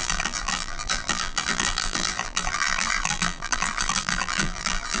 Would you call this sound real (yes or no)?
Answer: no